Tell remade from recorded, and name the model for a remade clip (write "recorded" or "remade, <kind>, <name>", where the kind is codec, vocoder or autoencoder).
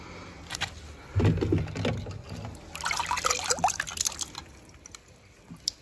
recorded